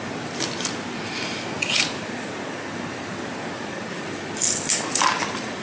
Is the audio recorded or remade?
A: recorded